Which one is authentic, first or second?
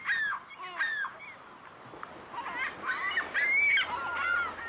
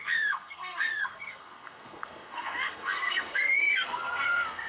first